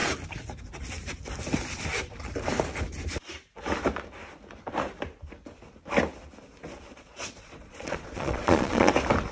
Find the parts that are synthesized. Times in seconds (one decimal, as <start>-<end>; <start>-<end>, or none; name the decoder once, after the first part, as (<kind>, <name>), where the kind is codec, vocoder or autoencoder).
6.9-8.9 (vocoder, Vocos)

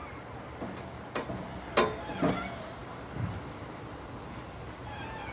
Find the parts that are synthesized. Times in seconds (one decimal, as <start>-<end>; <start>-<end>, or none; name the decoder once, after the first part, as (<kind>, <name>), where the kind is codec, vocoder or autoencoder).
none

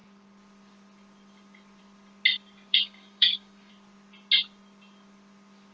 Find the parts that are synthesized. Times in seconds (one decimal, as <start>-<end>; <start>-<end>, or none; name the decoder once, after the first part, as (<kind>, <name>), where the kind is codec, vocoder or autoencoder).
2.7-3.7 (codec, DAC)

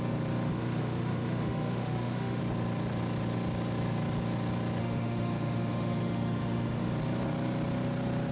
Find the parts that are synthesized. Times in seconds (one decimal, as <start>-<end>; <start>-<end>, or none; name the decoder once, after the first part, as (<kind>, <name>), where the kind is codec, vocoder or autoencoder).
0.5-2.4 (autoencoder, DAC-VAE); 4.8-6.9